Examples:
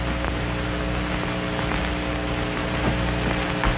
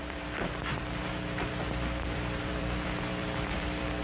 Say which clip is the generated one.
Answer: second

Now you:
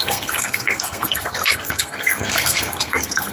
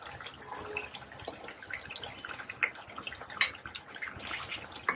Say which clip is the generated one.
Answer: first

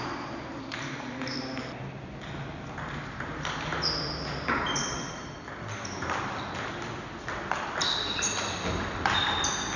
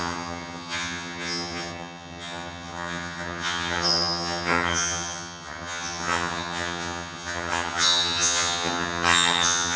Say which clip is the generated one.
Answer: second